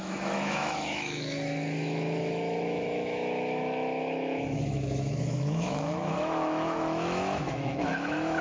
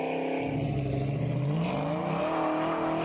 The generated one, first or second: first